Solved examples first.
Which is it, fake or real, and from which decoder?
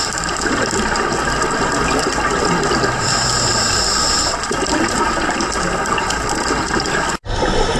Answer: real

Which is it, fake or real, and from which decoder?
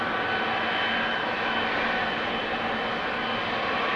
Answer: real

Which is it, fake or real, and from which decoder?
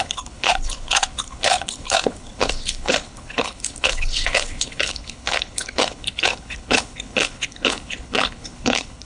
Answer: fake, codec, HILCodec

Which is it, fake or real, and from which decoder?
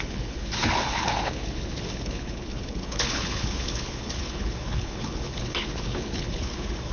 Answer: fake, codec, HILCodec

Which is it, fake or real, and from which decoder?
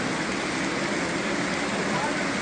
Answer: real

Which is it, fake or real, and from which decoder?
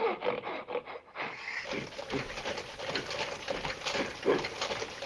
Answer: real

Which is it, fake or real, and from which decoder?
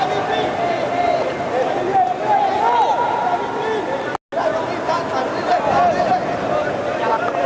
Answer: real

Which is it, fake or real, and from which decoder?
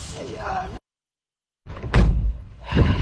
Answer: fake, codec, HILCodec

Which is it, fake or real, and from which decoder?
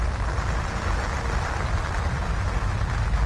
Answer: real